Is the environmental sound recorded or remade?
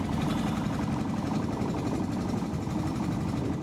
recorded